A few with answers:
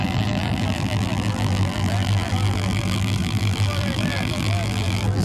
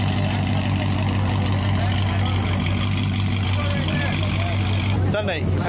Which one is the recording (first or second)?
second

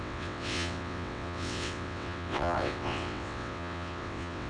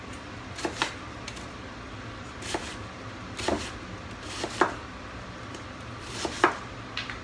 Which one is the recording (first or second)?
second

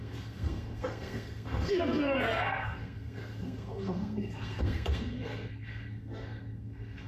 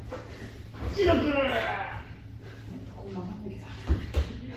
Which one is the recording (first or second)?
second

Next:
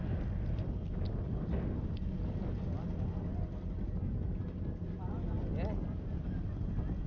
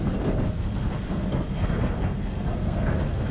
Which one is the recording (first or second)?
first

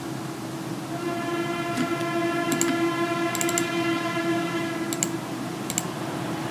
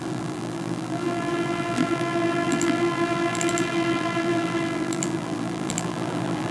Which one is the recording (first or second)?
first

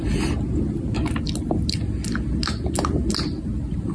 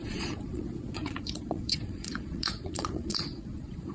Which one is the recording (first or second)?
first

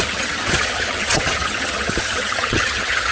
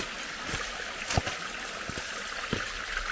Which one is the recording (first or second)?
second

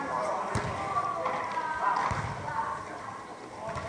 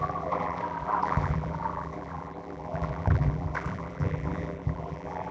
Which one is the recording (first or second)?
first